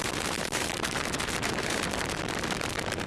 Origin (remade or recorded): remade